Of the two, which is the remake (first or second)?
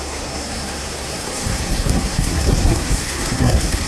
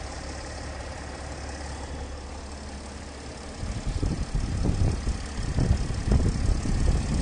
first